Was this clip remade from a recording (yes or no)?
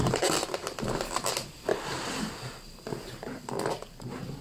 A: no